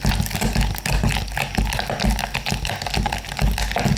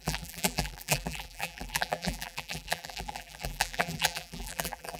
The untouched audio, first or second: first